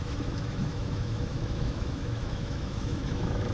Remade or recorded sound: remade